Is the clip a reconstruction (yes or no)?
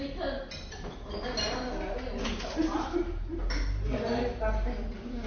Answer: no